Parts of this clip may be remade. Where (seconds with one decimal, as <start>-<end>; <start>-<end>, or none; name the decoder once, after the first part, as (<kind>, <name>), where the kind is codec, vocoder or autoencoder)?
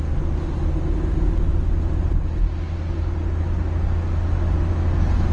none